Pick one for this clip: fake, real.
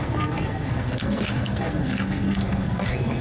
fake